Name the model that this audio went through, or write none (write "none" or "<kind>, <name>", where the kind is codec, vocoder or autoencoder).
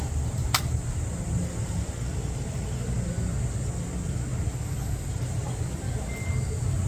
none